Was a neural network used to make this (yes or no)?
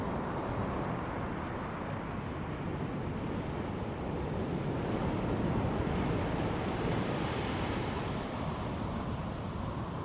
no